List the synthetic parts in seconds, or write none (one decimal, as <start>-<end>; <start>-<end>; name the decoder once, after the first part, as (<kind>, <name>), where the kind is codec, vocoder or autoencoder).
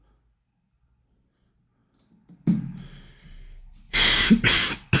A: none